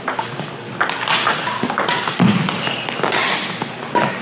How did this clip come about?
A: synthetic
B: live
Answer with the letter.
B